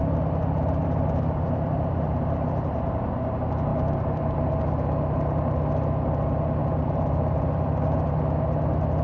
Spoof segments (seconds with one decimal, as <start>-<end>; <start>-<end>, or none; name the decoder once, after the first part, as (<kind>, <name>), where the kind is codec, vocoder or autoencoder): 0.8-3.1 (vocoder, BigVGAN v2); 3.7-4.2; 6.6-8.2